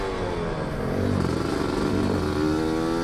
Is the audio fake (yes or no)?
no